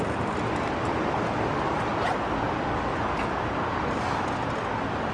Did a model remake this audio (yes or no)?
no